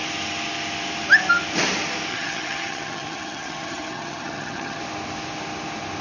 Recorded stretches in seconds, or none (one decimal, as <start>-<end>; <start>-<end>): 0.0-2.1; 4.8-6.0